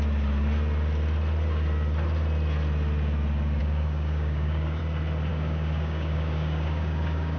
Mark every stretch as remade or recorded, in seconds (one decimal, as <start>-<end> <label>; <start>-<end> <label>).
0.0-3.6 recorded; 3.6-4.8 remade; 4.8-5.3 recorded; 5.3-7.4 remade